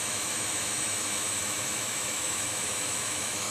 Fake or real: fake